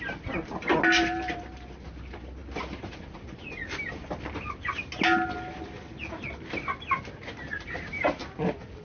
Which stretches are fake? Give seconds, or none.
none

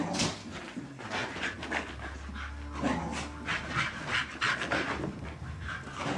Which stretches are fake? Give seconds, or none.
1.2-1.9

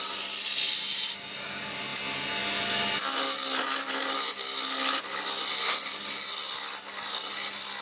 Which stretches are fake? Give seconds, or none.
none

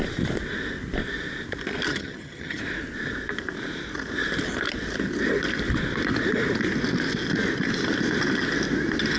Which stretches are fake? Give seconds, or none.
1.9-2.6